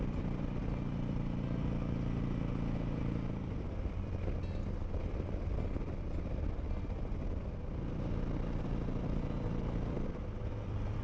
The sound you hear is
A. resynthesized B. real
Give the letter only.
B